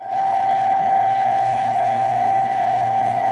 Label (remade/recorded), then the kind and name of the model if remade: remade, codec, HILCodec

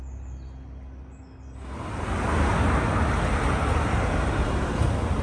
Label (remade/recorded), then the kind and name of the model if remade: recorded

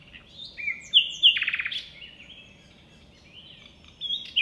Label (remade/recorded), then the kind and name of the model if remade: recorded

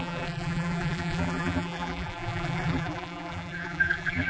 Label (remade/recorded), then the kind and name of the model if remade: remade, vocoder, BigVGAN v2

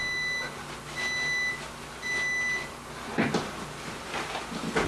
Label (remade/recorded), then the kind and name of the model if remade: recorded